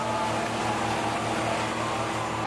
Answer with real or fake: real